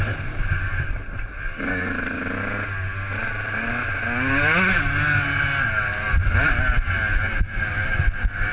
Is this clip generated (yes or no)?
no